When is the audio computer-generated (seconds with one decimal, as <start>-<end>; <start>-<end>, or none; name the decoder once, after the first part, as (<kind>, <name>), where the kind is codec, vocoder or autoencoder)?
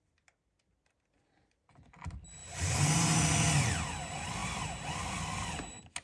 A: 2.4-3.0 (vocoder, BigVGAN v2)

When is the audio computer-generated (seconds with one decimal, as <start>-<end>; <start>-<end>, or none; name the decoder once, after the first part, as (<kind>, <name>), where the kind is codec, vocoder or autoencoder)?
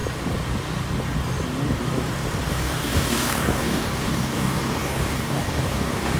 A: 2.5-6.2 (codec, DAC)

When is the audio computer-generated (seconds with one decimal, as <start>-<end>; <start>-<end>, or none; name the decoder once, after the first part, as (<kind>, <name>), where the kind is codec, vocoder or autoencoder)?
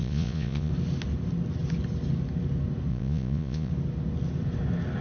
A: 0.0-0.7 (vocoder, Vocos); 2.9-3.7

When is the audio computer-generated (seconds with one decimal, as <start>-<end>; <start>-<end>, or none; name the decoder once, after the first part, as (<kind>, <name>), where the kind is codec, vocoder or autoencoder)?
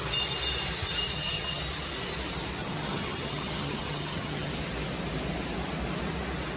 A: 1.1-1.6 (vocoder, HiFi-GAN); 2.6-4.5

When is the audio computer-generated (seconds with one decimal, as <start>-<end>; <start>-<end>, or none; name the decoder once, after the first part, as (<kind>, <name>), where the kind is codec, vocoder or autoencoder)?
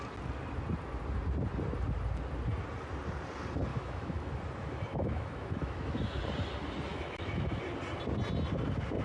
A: 3.7-4.3 (autoencoder, DAC-VAE); 4.9-6.2; 6.9-7.6